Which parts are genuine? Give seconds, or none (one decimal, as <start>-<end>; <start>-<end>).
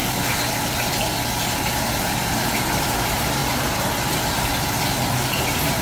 0.0-2.6; 3.4-5.3